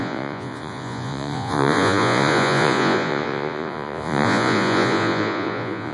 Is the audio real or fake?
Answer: fake